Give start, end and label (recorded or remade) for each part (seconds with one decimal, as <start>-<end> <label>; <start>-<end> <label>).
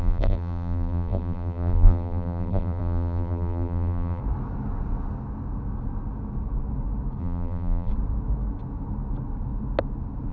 0.0-4.2 remade; 4.2-7.2 recorded; 7.2-7.9 remade; 7.9-10.3 recorded